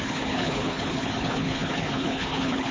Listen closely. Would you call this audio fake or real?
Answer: fake